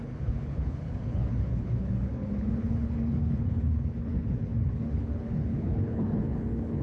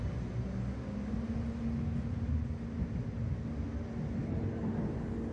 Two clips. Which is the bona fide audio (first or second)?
second